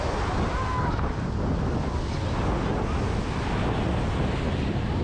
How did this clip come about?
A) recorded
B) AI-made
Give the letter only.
A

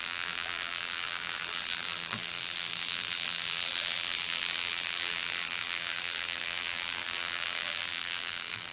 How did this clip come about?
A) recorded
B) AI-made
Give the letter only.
B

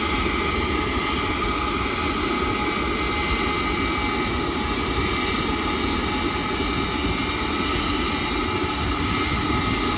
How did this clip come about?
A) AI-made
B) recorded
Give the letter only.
B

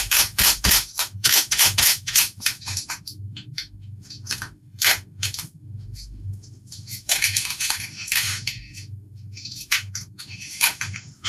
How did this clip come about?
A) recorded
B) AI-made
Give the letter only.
B